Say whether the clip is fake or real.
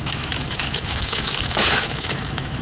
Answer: fake